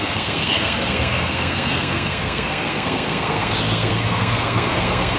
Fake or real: fake